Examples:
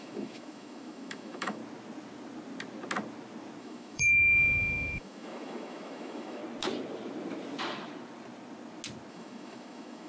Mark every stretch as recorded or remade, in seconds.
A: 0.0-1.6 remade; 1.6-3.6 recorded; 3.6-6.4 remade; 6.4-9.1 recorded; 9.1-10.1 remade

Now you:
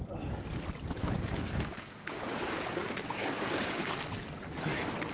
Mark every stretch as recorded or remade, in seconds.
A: 0.0-1.0 recorded; 1.0-4.1 remade; 4.1-5.1 recorded

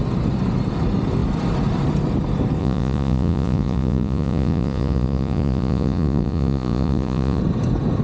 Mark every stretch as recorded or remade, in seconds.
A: 0.0-2.6 recorded; 2.6-7.4 remade; 7.4-8.0 recorded

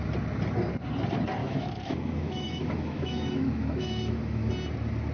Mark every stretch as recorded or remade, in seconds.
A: 0.0-1.4 recorded; 1.4-4.5 remade; 4.5-5.1 recorded

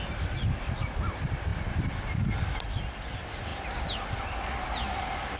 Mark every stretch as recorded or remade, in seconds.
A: 0.0-5.4 remade

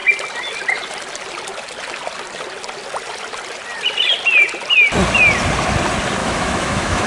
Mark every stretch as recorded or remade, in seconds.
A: 0.0-6.2 recorded; 6.2-7.1 remade